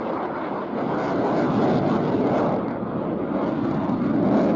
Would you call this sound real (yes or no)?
yes